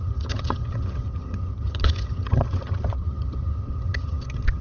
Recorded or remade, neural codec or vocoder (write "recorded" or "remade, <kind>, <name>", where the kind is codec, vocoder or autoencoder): remade, vocoder, HiFi-GAN